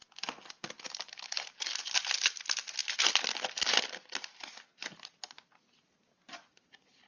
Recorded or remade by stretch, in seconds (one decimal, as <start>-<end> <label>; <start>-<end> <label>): 0.0-7.1 recorded